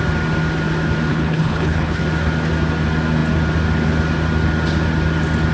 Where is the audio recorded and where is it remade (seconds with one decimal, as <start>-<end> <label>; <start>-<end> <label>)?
0.0-1.1 recorded; 1.1-2.0 remade; 2.0-5.5 recorded